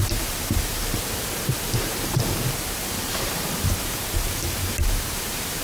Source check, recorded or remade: remade